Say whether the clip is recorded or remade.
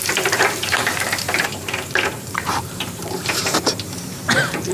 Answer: remade